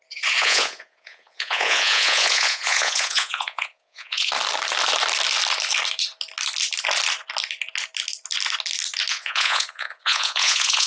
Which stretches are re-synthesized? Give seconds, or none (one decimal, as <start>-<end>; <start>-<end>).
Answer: 0.4-4.3; 9.1-10.9